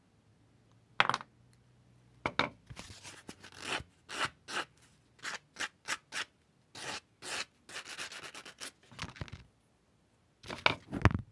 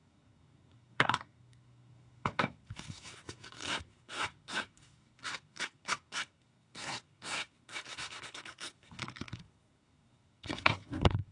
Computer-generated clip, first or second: second